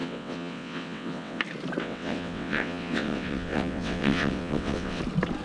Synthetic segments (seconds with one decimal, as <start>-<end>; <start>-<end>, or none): 0.0-1.4; 1.8-5.0